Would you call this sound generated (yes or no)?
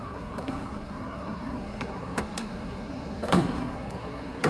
yes